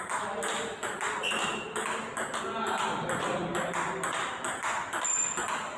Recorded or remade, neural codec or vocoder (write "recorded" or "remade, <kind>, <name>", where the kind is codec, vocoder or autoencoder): recorded